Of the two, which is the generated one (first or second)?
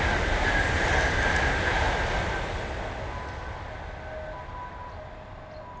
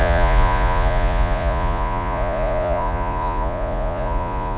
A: second